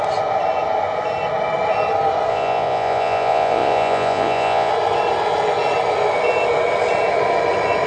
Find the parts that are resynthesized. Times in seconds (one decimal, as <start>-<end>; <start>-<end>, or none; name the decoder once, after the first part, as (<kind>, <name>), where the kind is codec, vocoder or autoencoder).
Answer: 2.3-4.7 (vocoder, Vocos)